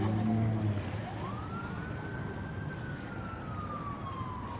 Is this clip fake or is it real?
real